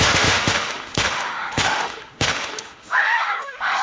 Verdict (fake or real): fake